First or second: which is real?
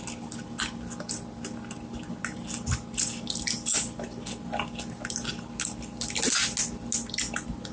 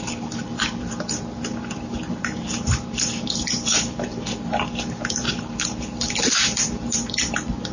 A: first